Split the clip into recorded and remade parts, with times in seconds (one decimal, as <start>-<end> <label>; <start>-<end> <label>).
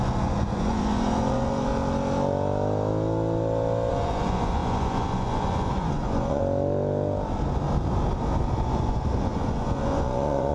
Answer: 0.0-1.7 remade; 1.7-3.9 recorded; 3.9-6.4 remade; 6.4-8.4 recorded; 8.4-10.5 remade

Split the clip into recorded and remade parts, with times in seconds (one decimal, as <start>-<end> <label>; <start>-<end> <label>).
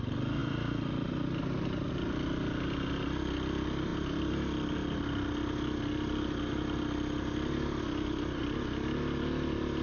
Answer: 0.0-9.8 recorded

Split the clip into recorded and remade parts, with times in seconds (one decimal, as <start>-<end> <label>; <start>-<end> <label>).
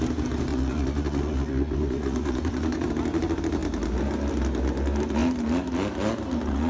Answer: 0.0-0.5 recorded; 0.5-2.9 remade; 2.9-6.7 recorded